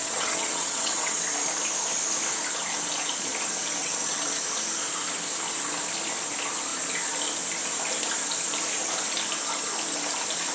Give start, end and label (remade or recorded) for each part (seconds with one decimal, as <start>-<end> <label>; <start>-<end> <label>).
0.0-1.2 remade; 1.2-3.8 recorded; 3.8-4.3 remade; 4.3-10.5 recorded